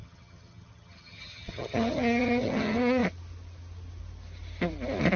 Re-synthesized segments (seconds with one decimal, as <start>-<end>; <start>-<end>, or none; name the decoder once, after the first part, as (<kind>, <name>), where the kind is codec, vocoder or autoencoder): 0.0-3.0 (vocoder, HiFi-GAN)